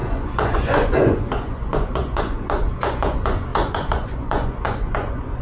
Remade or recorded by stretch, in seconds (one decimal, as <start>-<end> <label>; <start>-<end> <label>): 0.0-5.4 remade